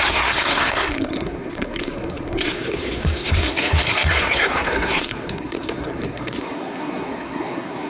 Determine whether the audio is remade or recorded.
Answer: remade